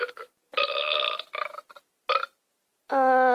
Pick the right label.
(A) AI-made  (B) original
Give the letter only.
B